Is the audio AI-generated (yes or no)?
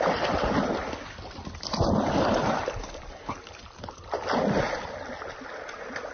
no